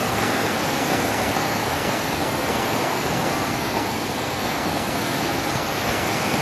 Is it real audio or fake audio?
fake